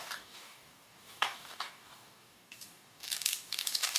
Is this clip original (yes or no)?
no